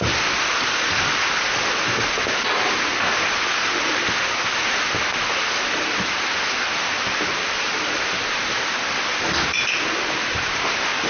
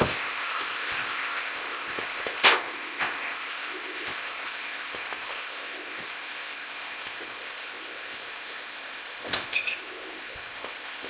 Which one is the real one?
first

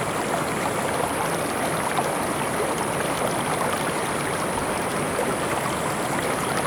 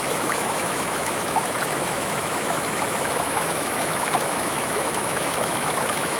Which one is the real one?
first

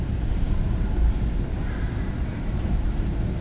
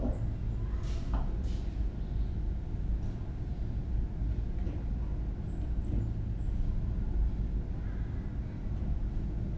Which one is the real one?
second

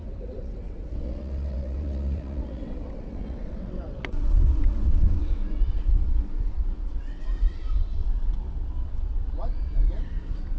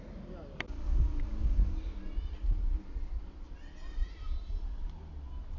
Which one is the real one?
second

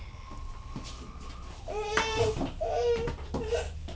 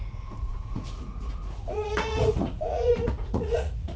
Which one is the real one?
first